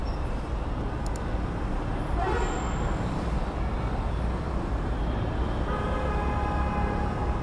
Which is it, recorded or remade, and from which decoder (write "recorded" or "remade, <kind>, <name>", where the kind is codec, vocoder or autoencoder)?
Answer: recorded